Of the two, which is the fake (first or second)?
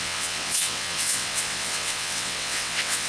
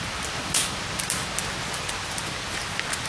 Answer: first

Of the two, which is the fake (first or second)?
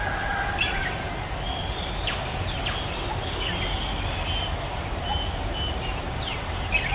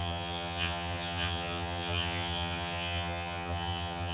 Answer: second